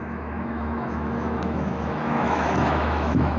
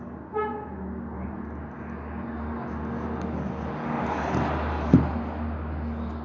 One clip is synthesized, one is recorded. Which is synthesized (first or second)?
first